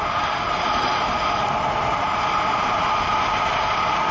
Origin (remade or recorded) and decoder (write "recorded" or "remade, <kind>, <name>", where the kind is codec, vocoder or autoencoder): recorded